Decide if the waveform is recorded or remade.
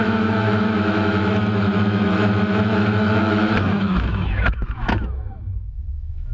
remade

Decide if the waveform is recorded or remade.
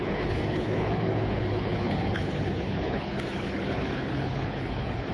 remade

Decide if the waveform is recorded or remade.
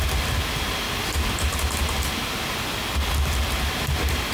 recorded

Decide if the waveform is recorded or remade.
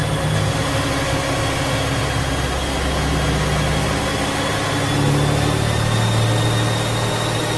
recorded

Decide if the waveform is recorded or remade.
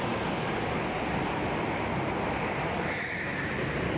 recorded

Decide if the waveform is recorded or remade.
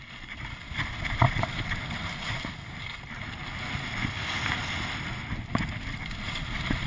recorded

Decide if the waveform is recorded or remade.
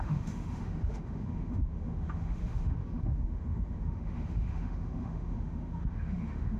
remade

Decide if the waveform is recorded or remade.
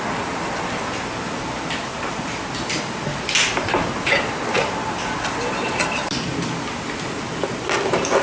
recorded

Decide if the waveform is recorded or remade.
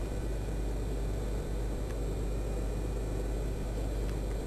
remade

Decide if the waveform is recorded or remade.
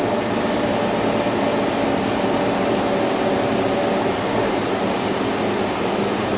recorded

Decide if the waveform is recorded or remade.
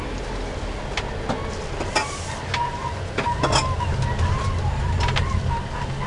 recorded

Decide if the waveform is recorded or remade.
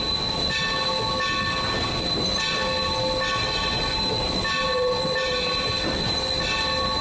recorded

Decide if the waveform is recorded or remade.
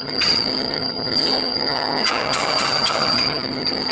remade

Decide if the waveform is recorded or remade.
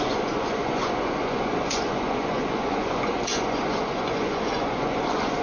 remade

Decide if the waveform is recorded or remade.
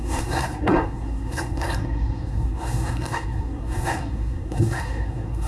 remade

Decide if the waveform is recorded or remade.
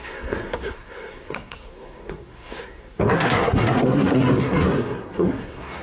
remade